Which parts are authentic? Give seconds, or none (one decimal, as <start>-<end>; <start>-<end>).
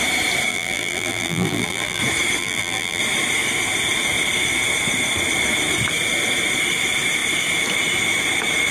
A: 0.0-0.5; 2.0-2.4; 3.0-8.7